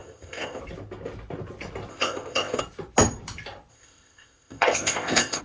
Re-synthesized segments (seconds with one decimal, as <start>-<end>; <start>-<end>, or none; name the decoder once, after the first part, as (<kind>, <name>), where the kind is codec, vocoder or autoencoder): 0.0-0.6 (codec, ZipCodec); 1.9-2.6; 3.7-5.4